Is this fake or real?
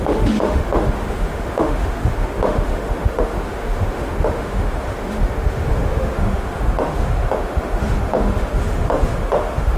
fake